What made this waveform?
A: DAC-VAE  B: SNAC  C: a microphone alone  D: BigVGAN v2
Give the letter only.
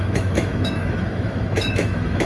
A